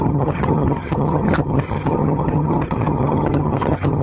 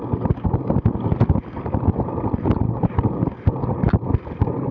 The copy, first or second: first